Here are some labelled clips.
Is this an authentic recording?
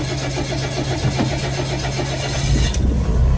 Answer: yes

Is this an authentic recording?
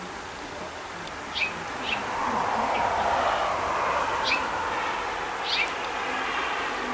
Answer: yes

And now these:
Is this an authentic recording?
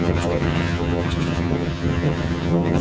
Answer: no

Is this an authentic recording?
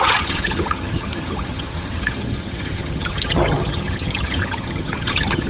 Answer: no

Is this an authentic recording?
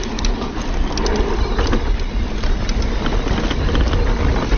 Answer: yes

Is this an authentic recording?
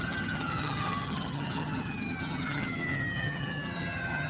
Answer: no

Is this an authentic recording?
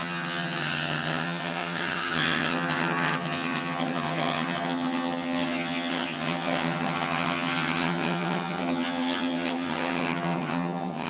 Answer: no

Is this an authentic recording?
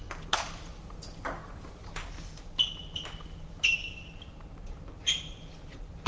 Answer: yes